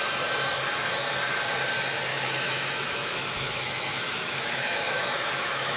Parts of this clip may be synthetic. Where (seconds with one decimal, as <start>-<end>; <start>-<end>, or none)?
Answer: 2.1-5.8